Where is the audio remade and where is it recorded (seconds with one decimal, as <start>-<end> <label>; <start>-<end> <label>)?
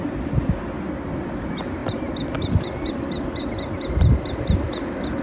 0.0-1.8 recorded; 1.8-3.9 remade; 3.9-5.2 recorded